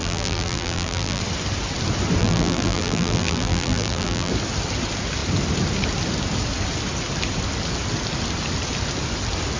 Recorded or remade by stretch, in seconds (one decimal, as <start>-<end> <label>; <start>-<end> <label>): 0.0-1.2 remade; 1.2-2.2 recorded; 2.2-4.3 remade; 4.3-9.6 recorded